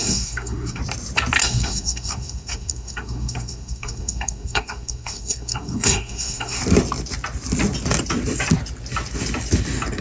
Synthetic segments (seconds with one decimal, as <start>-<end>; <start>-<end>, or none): 0.0-0.8; 1.4-6.6